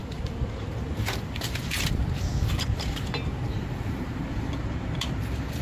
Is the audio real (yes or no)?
no